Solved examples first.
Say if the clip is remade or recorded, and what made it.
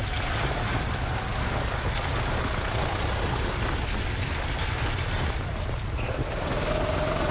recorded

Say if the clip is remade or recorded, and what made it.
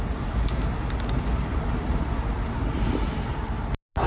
recorded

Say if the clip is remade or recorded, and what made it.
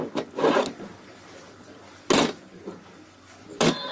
recorded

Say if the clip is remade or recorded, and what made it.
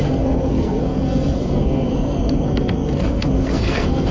remade, codec, SNAC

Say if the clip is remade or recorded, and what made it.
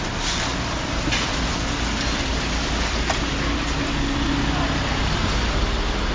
recorded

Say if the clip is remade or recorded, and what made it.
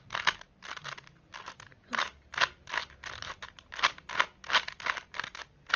recorded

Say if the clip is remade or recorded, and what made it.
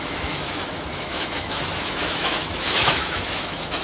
remade, autoencoder, DAC-VAE